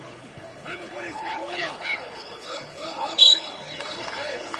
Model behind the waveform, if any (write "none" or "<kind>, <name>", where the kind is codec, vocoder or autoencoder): codec, HILCodec